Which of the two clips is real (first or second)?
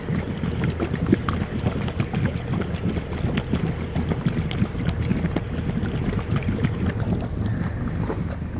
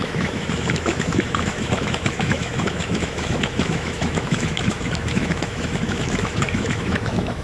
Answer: first